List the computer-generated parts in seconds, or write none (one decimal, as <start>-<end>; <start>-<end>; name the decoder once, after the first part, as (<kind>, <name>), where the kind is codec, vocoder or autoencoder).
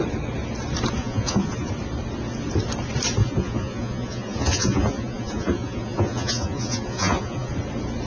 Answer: 1.0-1.7 (vocoder, Vocos); 3.2-7.5